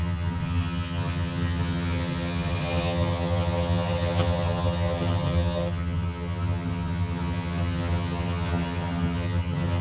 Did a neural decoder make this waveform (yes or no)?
yes